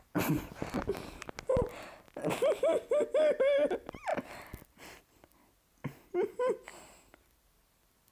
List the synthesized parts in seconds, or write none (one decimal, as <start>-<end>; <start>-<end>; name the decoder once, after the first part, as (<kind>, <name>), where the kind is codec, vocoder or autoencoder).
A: none